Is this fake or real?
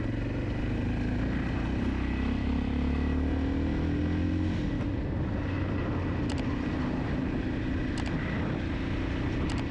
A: real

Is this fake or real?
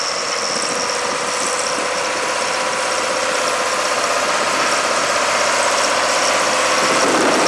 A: real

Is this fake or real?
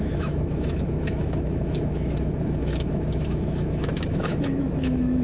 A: fake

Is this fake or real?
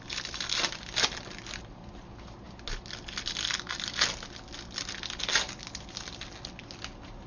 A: real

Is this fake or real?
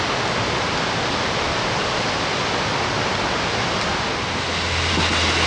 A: real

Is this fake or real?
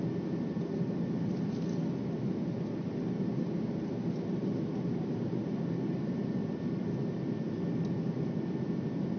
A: real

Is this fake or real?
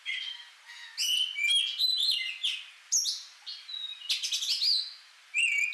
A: real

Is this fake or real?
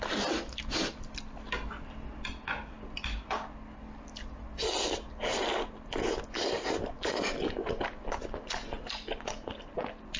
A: real